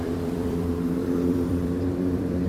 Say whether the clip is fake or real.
fake